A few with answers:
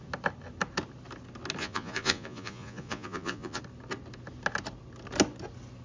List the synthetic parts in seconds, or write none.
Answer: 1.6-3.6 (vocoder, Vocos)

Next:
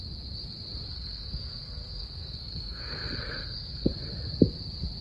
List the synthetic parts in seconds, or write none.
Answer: 0.9-3.9 (codec, SNAC)